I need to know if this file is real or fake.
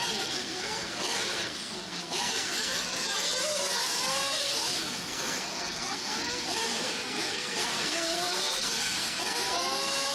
fake